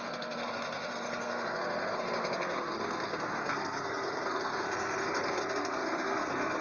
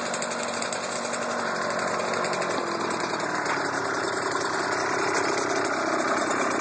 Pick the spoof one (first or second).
first